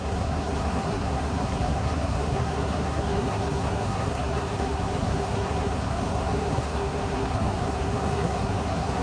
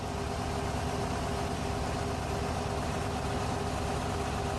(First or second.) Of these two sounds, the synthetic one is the first